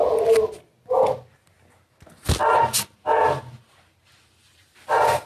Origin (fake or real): real